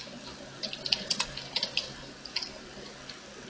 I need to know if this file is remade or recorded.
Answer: recorded